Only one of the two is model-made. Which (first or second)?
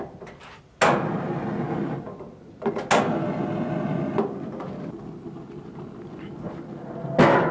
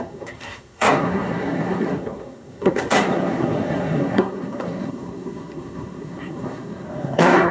second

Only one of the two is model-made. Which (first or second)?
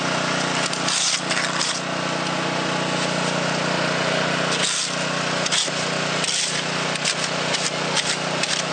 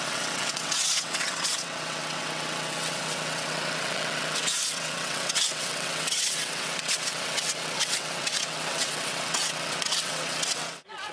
second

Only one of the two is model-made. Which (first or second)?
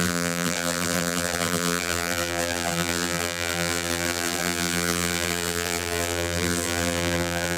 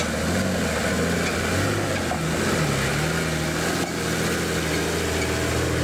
first